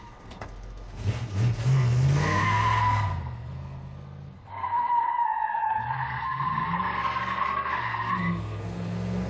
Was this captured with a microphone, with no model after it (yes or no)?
no